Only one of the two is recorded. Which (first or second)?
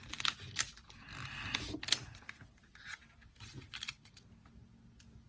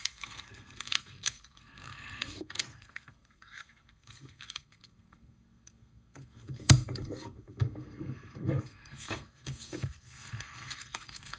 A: first